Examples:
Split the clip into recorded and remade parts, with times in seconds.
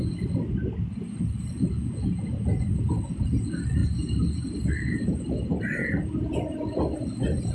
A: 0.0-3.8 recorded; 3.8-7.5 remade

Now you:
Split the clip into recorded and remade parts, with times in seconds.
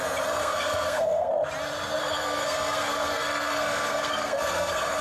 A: 0.0-0.4 recorded; 0.4-1.3 remade; 1.3-2.0 recorded; 2.0-5.0 remade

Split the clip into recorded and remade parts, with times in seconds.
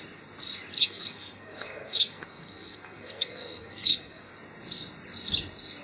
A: 0.0-0.8 recorded; 0.8-4.3 remade; 4.3-5.8 recorded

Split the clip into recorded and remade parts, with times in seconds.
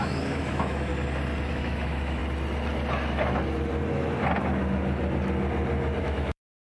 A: 0.0-0.9 remade; 0.9-1.5 recorded; 1.5-2.2 remade; 2.2-6.0 recorded; 6.0-6.7 remade